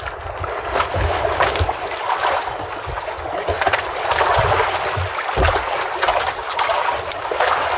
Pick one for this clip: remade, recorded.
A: recorded